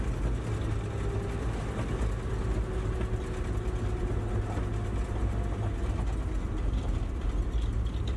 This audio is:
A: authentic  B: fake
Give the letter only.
A